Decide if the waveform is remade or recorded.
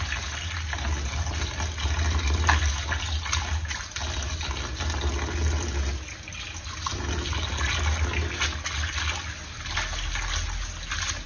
recorded